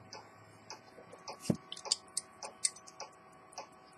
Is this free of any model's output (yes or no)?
yes